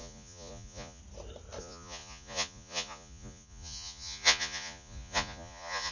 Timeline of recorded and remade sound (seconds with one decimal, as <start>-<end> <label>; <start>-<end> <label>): 0.0-1.0 remade; 1.0-1.6 recorded; 1.6-5.9 remade